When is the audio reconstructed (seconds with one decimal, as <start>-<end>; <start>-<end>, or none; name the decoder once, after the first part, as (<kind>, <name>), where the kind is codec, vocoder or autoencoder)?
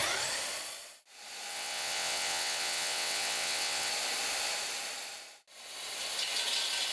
1.5-3.9 (vocoder, WaveNeXt)